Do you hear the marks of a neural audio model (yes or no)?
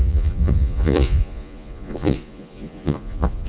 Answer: yes